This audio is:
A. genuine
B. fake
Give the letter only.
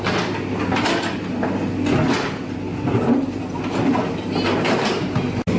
A